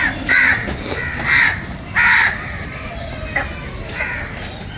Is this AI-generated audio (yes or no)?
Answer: no